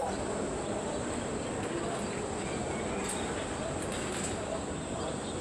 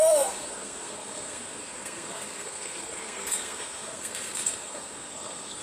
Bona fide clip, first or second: first